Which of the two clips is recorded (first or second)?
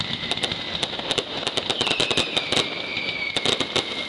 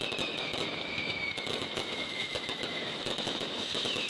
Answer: first